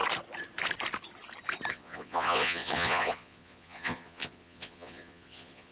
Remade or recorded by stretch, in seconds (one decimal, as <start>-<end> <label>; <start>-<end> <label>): 0.0-1.7 recorded; 1.7-5.7 remade